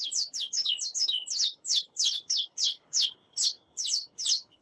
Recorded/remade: remade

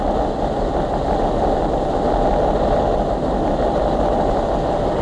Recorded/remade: recorded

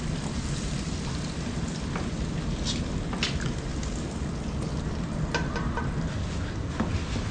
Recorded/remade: recorded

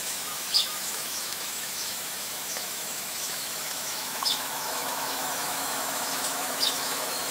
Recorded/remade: remade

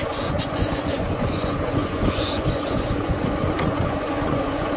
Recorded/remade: remade